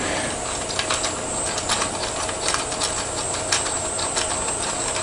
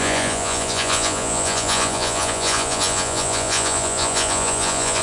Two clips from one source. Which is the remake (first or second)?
second